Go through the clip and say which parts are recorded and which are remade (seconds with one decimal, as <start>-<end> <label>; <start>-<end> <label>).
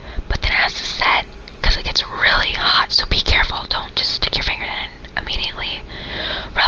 0.0-0.7 remade; 0.7-6.7 recorded